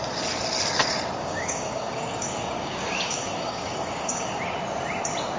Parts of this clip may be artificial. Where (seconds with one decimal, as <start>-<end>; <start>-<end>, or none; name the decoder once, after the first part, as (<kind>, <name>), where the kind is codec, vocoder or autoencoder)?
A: 1.2-4.4 (codec, DAC)